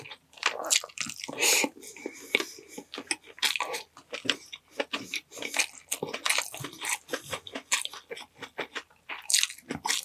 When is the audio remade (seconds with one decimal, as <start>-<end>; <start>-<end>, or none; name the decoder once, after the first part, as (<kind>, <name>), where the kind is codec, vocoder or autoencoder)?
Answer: 0.4-0.9 (vocoder, BigVGAN v2); 1.4-2.4